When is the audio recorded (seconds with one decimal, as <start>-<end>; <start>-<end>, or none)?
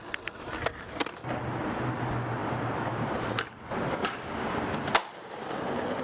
0.0-6.0